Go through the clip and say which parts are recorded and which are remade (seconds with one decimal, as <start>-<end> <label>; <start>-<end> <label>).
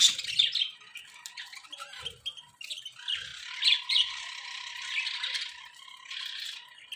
0.0-7.0 recorded